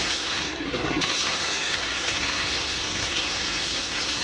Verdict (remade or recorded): remade